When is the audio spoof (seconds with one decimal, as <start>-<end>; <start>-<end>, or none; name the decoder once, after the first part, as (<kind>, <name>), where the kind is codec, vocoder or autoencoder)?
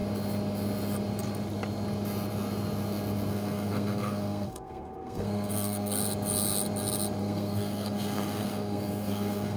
3.3-6.0 (codec, SNAC); 7.2-9.6